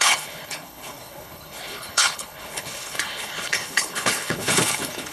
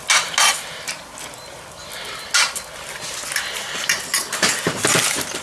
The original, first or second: second